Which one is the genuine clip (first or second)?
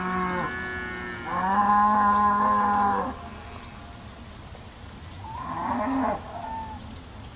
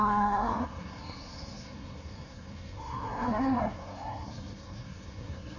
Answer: first